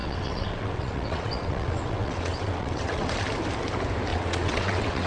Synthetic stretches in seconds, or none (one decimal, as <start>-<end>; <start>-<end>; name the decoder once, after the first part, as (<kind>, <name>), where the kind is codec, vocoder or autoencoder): 0.0-3.1 (vocoder, WaveNeXt); 4.1-5.1